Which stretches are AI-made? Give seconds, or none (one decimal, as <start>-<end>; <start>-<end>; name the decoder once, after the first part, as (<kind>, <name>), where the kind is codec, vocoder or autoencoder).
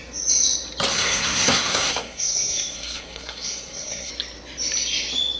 0.9-4.1 (codec, SNAC)